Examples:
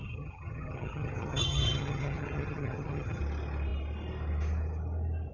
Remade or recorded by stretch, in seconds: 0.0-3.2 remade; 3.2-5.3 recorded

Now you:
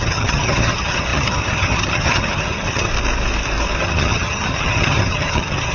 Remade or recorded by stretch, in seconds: 0.0-2.9 remade; 2.9-3.8 recorded; 3.8-5.7 remade

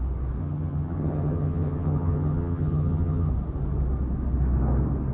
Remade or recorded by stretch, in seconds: 0.0-0.4 recorded; 0.4-3.3 remade; 3.3-5.1 recorded

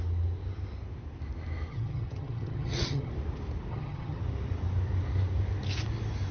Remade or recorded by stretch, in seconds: 0.0-1.7 recorded; 1.7-3.1 remade; 3.1-3.7 recorded; 3.7-4.2 remade; 4.2-6.3 recorded